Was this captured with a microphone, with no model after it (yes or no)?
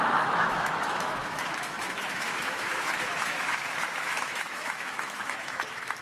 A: no